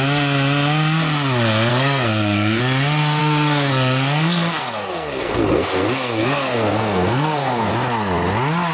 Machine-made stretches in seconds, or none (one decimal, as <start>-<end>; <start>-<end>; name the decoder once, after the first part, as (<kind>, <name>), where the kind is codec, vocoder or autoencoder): 1.7-2.6 (codec, SNAC); 3.2-7.7